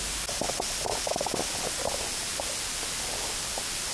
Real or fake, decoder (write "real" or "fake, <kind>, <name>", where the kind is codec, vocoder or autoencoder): real